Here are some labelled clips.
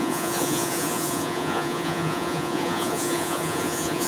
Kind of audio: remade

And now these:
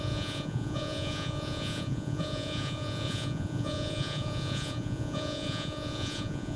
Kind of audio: remade